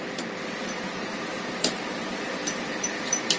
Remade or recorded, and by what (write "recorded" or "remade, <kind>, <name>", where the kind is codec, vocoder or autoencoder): remade, vocoder, BigVGAN v2